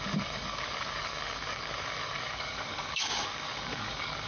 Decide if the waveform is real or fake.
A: fake